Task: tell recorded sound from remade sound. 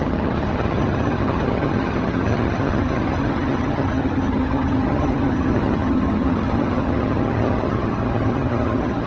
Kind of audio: remade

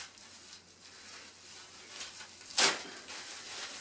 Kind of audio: recorded